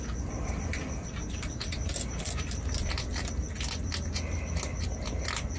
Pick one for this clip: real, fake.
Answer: real